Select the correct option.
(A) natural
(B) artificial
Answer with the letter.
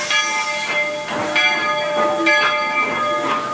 A